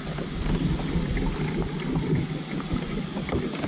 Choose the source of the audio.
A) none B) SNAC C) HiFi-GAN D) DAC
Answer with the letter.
A